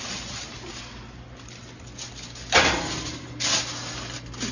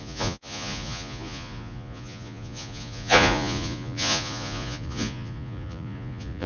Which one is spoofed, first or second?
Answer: second